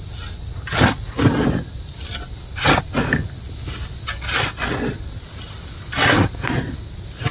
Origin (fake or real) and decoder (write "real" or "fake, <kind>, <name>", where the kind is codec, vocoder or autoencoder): real